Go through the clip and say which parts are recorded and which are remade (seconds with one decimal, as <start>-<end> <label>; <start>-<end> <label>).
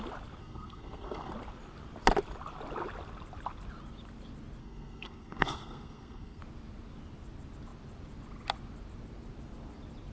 0.0-0.4 recorded; 0.4-1.3 remade; 1.3-4.6 recorded; 4.6-6.4 remade; 6.4-10.1 recorded